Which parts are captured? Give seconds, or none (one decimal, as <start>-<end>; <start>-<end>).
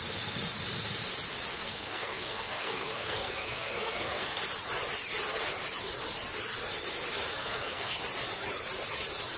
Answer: 0.0-1.5; 4.4-7.4; 8.0-9.4